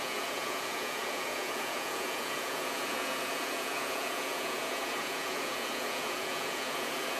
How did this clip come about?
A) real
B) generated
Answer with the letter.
B